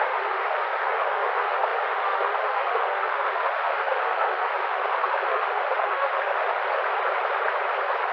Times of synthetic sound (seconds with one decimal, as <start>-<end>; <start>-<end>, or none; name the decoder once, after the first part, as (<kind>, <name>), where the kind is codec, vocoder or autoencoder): 0.0-6.6 (autoencoder, DAC-VAE)